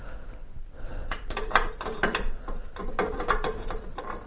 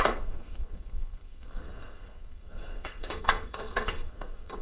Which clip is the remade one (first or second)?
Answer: second